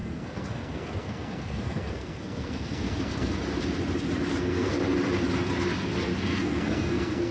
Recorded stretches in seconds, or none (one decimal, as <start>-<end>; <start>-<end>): 3.3-4.3; 4.8-6.3